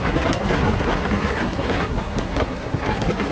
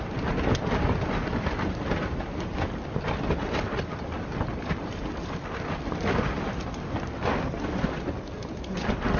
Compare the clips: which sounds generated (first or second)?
first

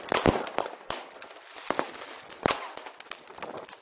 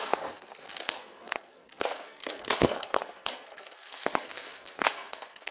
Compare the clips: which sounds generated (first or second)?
second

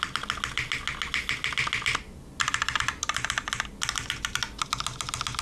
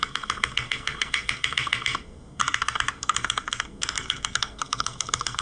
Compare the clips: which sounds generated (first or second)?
second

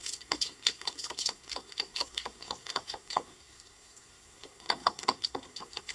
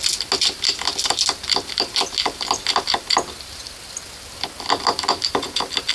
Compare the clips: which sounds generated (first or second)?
first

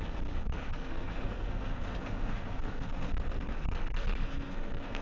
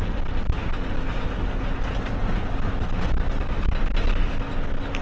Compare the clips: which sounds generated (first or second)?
first